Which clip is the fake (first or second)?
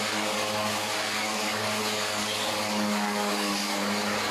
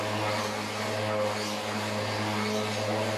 first